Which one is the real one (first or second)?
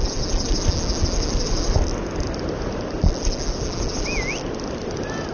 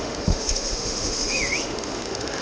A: first